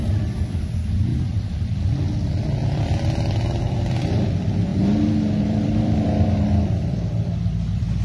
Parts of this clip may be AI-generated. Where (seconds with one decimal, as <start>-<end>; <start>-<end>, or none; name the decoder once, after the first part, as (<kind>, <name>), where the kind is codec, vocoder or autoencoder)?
0.6-4.7 (vocoder, BigVGAN v2); 5.4-8.0